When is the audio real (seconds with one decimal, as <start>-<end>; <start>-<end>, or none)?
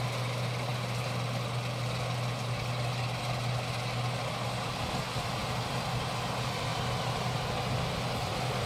0.0-8.7